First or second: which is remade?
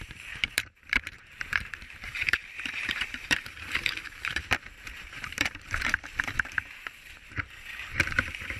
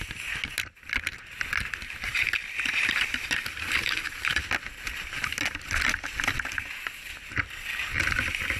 first